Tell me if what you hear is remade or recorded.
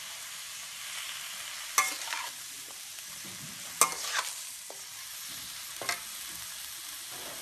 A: recorded